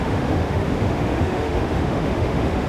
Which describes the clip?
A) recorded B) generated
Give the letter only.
B